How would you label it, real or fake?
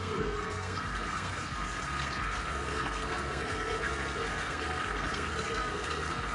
fake